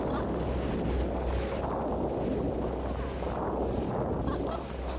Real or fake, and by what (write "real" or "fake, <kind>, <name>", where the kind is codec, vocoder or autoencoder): real